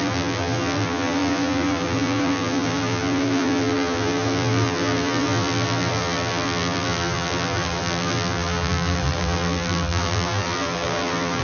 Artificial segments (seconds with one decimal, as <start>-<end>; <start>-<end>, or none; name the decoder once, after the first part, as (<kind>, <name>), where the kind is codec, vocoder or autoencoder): 0.0-11.4 (vocoder, BigVGAN v2)